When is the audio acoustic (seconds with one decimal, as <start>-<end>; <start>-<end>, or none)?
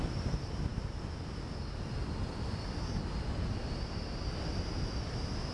0.0-5.5